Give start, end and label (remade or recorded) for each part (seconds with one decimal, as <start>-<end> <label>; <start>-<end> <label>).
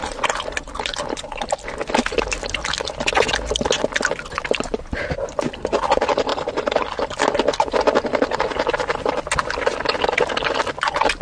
0.0-11.2 recorded